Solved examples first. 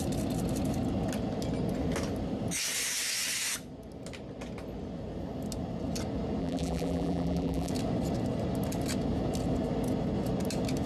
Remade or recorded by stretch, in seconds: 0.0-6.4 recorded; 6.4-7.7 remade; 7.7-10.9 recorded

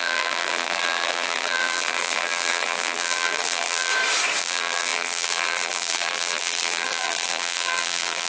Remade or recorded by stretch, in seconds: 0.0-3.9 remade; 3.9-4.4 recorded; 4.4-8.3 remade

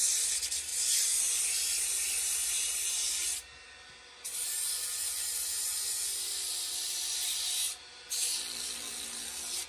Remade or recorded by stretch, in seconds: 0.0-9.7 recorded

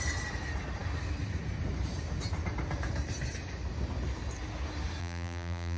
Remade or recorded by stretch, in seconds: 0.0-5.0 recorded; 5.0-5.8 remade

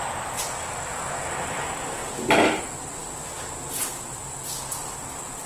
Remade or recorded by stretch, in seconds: 0.0-2.0 remade; 2.0-2.6 recorded; 2.6-3.0 remade; 3.0-3.9 recorded; 3.9-5.5 remade